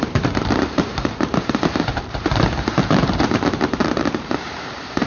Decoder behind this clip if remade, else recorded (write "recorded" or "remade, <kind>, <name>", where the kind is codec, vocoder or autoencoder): remade, vocoder, BigVGAN v2